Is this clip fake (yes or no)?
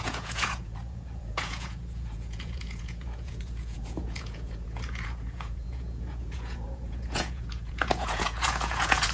yes